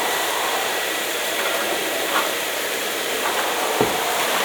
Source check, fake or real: fake